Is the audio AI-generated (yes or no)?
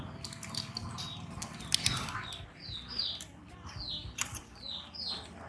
no